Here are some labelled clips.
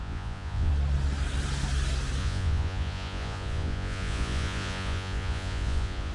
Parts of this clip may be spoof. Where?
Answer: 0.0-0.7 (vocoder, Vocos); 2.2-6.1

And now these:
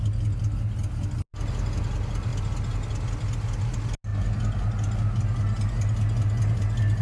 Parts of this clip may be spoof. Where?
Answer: none

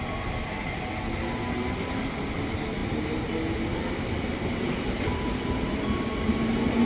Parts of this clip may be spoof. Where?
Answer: none

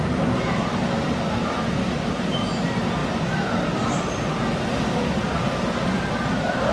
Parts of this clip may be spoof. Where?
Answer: none